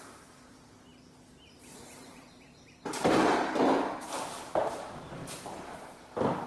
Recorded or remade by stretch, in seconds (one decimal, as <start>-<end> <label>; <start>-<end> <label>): 0.0-0.9 recorded; 0.9-4.8 remade; 4.8-5.2 recorded; 5.2-5.7 remade; 5.7-6.5 recorded